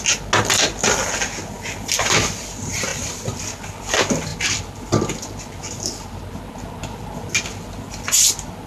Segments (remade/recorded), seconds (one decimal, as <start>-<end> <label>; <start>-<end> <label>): 0.0-8.7 recorded